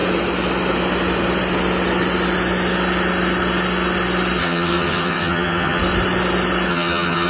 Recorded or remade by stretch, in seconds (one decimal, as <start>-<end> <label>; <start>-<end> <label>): 0.0-4.4 recorded; 4.4-5.8 remade; 5.8-6.7 recorded; 6.7-7.3 remade